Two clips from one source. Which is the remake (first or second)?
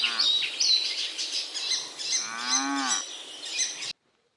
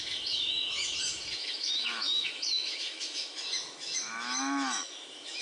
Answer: second